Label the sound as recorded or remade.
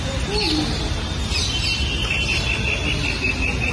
recorded